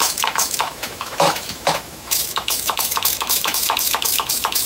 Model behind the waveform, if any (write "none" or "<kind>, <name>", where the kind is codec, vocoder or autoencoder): autoencoder, DAC-VAE